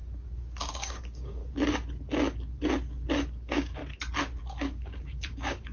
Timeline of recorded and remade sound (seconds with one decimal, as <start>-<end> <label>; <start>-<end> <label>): 0.0-0.7 recorded; 0.7-1.4 remade; 1.4-3.3 recorded; 3.3-3.8 remade; 3.8-4.4 recorded; 4.4-5.7 remade